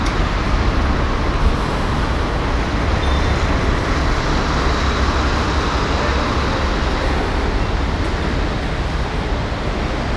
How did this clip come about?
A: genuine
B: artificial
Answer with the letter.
A